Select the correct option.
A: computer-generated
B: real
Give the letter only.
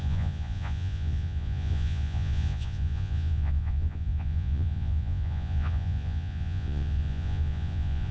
A